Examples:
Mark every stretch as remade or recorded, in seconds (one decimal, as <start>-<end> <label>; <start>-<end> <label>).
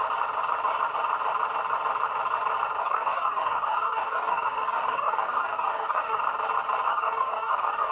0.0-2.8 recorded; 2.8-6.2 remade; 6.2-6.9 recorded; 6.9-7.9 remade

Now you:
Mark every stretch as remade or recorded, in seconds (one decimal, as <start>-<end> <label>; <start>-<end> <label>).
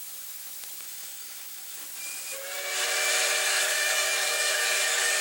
0.0-0.8 recorded; 0.8-1.8 remade; 1.8-3.6 recorded; 3.6-5.2 remade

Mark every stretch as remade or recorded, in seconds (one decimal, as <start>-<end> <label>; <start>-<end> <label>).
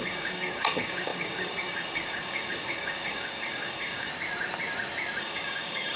0.0-4.1 remade; 4.1-5.2 recorded; 5.2-6.0 remade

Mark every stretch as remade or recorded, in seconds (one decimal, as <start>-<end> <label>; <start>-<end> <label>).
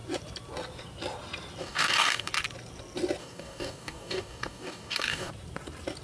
0.0-1.6 recorded; 1.6-2.3 remade; 2.3-3.2 recorded; 3.2-5.3 remade; 5.3-6.0 recorded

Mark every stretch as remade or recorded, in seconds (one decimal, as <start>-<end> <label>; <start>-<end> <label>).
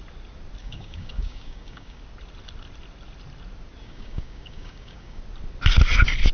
0.0-0.6 recorded; 0.6-2.0 remade; 2.0-3.8 recorded; 3.8-5.2 remade; 5.2-6.3 recorded